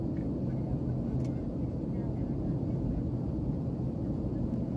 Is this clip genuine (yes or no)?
yes